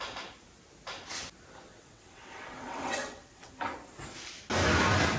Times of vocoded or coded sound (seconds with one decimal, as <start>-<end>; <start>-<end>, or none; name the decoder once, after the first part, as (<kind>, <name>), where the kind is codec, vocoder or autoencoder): 1.7-3.5 (vocoder, WaveNeXt)